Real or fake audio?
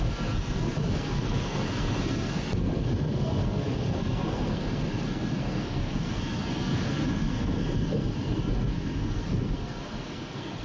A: fake